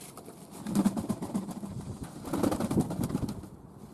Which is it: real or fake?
real